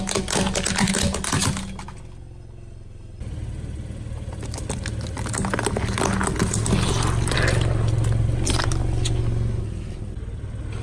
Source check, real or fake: real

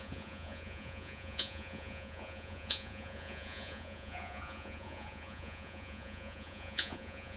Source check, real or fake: fake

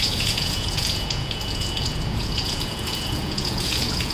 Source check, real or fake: fake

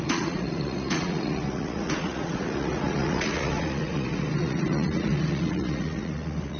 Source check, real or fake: fake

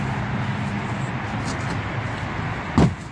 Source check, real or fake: real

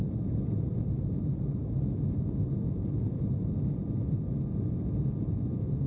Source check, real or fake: real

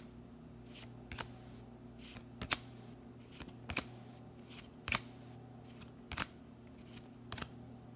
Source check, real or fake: real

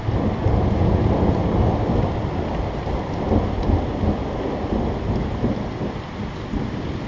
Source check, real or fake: real